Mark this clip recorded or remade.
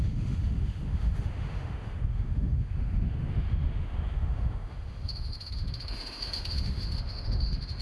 remade